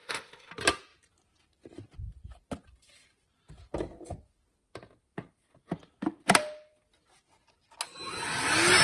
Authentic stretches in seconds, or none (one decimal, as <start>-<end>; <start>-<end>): 0.5-8.8